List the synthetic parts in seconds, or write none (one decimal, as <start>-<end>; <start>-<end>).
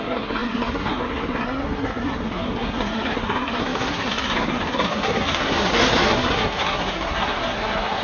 0.0-8.0